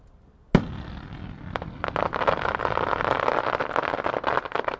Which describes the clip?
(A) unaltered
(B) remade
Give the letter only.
A